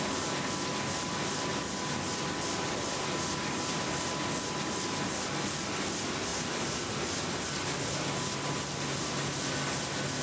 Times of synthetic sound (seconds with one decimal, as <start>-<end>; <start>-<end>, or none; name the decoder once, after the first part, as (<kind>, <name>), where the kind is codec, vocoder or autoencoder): none